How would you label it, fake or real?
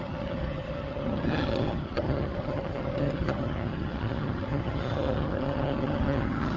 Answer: fake